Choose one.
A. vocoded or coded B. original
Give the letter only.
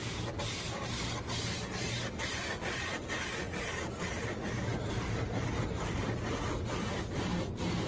B